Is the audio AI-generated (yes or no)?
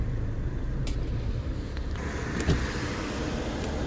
no